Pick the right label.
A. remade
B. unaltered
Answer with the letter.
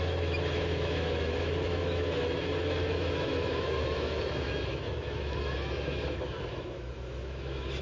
A